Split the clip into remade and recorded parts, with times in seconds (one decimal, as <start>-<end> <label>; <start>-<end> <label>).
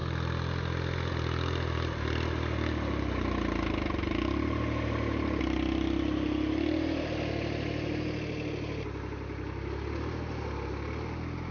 0.0-11.5 recorded